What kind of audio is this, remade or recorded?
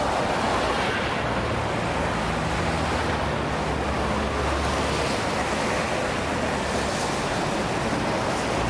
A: recorded